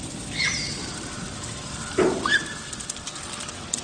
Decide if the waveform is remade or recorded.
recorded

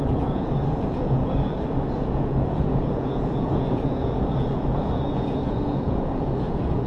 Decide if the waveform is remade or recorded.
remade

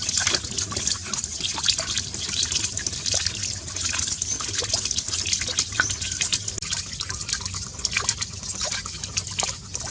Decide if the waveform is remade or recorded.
recorded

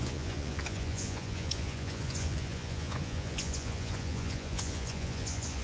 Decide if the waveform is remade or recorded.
remade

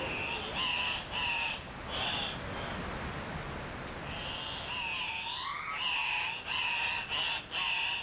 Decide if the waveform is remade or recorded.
recorded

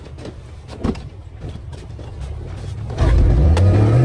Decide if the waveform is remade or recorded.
recorded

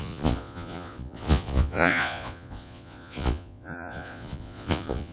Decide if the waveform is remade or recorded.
remade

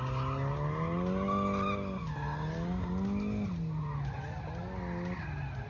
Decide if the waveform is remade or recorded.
recorded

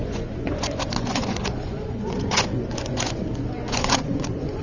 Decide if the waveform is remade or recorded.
remade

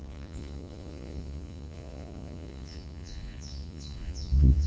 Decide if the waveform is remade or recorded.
remade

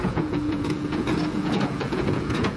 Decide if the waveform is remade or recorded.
remade